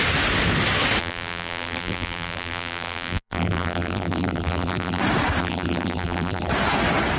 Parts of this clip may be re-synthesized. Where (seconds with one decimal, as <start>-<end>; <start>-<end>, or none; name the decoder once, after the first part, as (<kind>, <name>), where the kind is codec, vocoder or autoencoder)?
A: 1.0-5.0 (vocoder, BigVGAN v2); 5.4-6.5